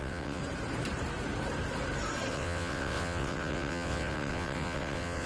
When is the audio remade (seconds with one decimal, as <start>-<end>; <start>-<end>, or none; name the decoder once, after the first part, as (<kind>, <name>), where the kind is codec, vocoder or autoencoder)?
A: 0.0-0.4 (vocoder, WaveNeXt); 2.3-5.3